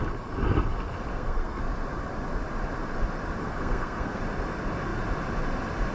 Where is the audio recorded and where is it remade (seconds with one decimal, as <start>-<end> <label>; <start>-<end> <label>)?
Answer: 0.0-1.1 recorded; 1.1-1.6 remade; 1.6-3.4 recorded; 3.4-4.2 remade; 4.2-5.9 recorded